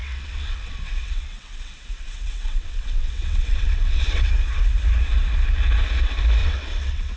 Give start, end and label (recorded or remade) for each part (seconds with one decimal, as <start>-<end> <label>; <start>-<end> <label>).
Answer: 0.0-4.3 remade; 4.3-6.4 recorded; 6.4-7.2 remade